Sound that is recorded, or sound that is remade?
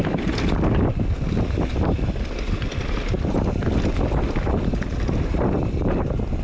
recorded